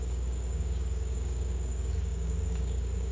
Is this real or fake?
fake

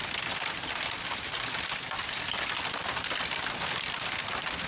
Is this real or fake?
real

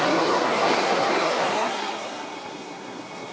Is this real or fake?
fake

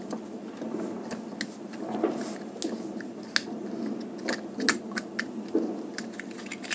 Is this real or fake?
real